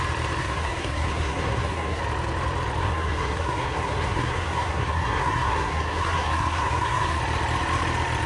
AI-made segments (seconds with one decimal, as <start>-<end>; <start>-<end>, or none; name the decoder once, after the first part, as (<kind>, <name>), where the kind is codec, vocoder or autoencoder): 0.4-2.0 (codec, SNAC); 2.8-7.2